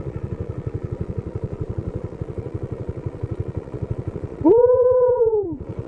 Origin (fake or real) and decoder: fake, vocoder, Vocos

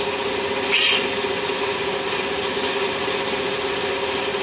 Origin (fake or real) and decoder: real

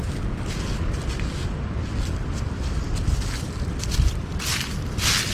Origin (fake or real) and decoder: real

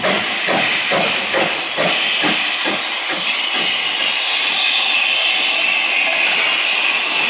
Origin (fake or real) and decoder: real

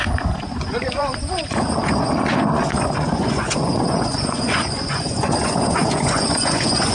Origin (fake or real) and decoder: fake, vocoder, Vocos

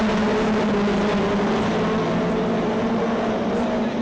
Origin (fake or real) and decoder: real